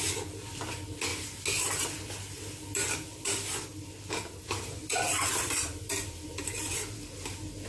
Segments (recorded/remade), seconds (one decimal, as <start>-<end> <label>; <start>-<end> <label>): 0.0-7.7 recorded

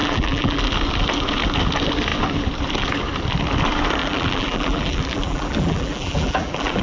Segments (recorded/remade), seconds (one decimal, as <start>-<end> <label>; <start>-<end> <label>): 0.0-0.6 remade; 0.6-4.0 recorded; 4.0-6.8 remade

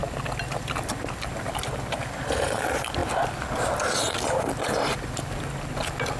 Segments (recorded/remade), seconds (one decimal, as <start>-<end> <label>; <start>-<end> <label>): 0.0-6.2 recorded

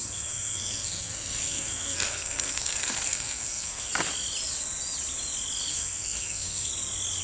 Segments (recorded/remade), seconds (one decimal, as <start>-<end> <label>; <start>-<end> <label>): 0.0-3.9 remade; 3.9-5.7 recorded; 5.7-6.7 remade; 6.7-7.2 recorded

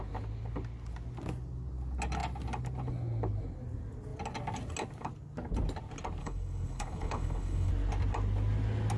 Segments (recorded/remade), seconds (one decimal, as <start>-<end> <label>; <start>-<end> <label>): 0.0-6.2 recorded; 6.2-7.7 remade; 7.7-9.0 recorded

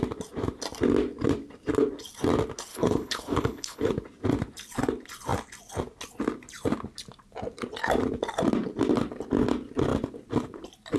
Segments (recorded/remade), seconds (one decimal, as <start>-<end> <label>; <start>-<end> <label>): 0.0-2.7 recorded; 2.7-3.9 remade; 3.9-11.0 recorded

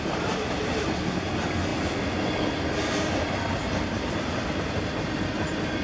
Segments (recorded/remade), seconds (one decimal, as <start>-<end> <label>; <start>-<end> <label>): 0.0-5.8 recorded